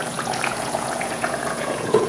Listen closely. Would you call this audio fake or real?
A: fake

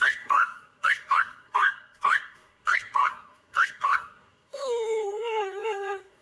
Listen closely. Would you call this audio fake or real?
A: fake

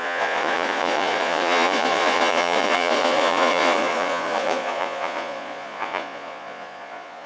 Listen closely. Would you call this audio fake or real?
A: fake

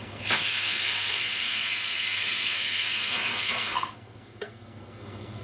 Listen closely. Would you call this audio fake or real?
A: fake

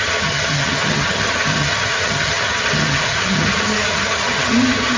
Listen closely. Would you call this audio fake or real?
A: fake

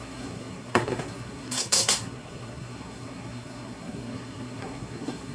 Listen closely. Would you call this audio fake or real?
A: fake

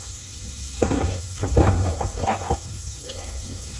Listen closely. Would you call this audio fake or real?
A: fake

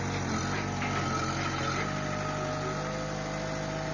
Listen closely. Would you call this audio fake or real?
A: real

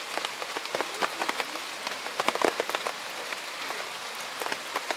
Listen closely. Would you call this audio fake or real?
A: real